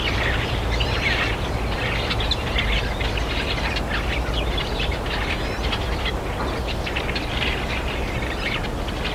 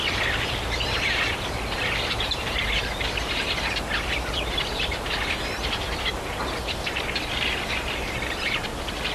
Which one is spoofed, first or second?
second